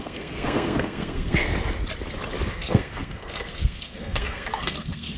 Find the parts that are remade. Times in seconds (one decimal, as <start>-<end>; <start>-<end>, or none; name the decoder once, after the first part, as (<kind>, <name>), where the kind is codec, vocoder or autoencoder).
0.0-1.5 (codec, SNAC); 2.5-5.2